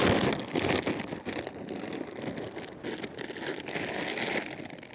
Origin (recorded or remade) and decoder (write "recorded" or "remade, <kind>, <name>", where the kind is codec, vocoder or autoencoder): recorded